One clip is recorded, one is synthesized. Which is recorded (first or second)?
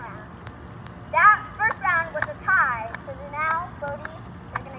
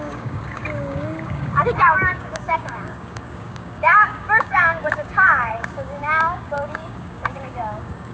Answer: first